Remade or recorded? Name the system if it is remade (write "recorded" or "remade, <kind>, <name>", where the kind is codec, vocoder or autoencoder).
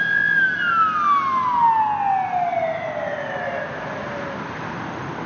recorded